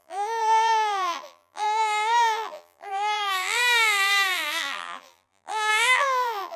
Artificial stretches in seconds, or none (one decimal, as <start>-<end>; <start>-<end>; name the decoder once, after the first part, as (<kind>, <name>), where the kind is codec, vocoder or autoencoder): 0.0-6.6 (vocoder, BigVGAN v2)